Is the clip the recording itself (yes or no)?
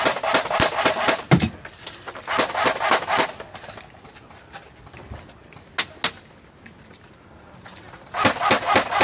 yes